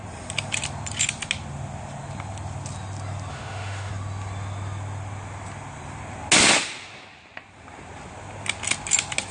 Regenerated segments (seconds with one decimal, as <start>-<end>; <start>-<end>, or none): 3.3-3.9